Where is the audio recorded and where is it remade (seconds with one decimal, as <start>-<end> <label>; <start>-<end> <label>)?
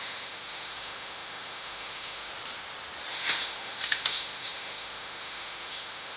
0.0-2.3 remade; 2.3-3.1 recorded; 3.1-6.2 remade